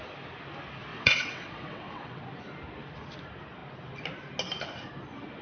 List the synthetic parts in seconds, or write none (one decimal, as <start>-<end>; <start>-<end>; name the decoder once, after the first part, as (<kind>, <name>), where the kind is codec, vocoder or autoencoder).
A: 0.9-2.2 (vocoder, WaveNeXt)